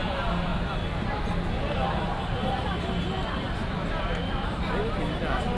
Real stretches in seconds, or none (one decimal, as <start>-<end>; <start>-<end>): 0.0-5.6